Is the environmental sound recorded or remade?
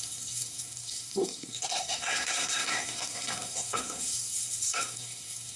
remade